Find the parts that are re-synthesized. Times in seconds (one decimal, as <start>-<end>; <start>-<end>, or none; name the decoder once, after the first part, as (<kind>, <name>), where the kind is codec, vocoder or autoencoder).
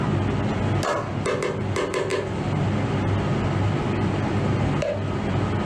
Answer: none